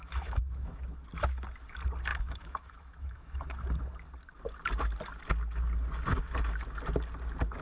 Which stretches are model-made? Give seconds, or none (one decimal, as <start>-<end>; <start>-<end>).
0.0-0.9; 2.1-3.5